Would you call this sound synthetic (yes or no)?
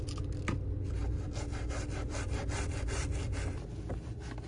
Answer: no